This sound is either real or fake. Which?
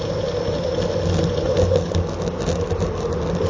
real